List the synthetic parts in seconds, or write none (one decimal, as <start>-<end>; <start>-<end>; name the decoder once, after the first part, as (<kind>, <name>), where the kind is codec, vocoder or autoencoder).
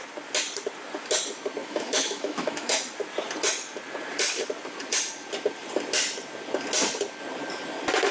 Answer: 1.6-2.8 (autoencoder, DAC-VAE)